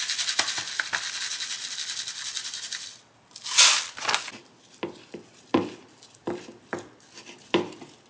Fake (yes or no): no